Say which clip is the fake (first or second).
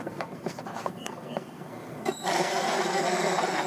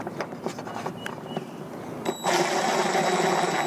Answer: first